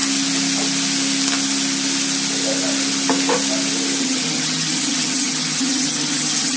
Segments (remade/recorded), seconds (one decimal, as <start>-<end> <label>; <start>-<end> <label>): 0.0-4.0 recorded; 4.0-6.6 remade